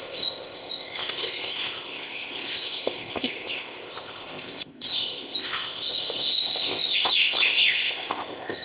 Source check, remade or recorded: remade